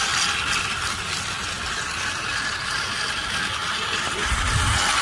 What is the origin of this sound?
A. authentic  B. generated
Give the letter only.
A